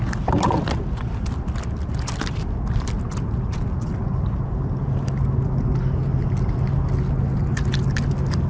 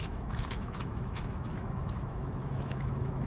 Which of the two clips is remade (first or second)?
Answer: second